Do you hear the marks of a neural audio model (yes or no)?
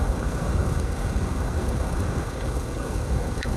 yes